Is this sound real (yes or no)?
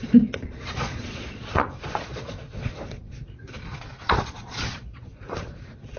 no